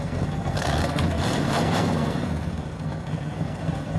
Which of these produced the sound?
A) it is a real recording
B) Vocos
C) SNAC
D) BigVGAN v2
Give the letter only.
C